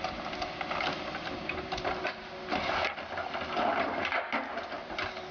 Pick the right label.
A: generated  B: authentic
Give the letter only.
B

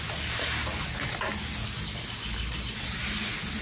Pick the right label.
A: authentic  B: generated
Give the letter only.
A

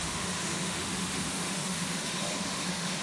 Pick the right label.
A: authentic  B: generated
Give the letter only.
B